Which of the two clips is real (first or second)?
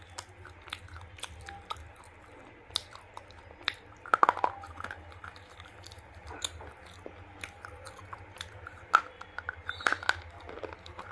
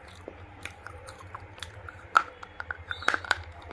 first